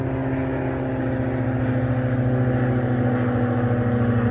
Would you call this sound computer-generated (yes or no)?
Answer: no